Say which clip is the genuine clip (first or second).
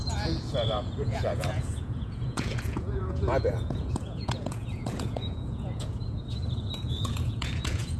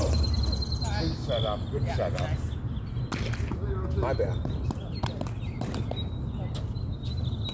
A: second